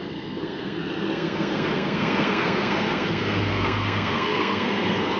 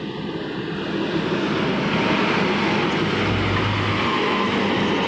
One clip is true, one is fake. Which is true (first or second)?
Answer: second